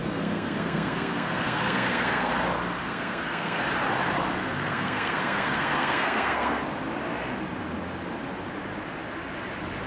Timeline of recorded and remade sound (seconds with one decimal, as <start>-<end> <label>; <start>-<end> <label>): 0.0-2.3 remade; 2.3-2.8 recorded; 2.8-3.6 remade; 3.6-4.4 recorded; 4.4-6.6 remade; 6.6-9.9 recorded